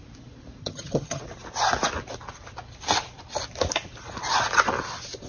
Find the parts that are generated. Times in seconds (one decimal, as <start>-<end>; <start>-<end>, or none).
0.6-1.2